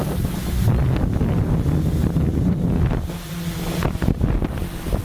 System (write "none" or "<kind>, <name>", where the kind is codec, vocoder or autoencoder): none